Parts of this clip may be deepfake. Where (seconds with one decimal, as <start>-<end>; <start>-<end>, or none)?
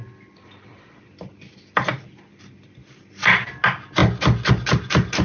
2.3-3.5